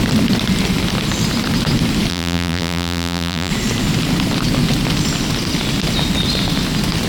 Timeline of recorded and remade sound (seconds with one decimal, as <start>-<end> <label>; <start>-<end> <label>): 0.0-2.1 recorded; 2.1-3.5 remade; 3.5-7.1 recorded